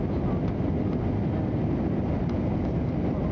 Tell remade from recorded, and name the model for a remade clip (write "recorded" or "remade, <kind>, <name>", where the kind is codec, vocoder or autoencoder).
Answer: recorded